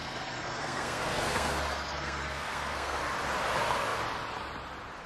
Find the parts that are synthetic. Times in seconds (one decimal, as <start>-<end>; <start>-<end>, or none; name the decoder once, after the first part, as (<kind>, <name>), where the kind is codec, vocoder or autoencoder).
0.0-3.0 (codec, SNAC)